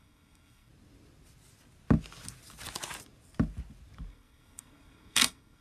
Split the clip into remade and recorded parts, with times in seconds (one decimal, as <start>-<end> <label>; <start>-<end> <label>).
0.0-0.7 remade; 0.7-4.1 recorded; 4.1-5.6 remade